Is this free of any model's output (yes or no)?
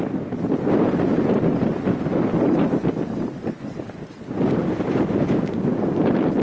yes